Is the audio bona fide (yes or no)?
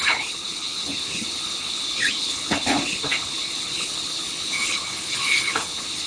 no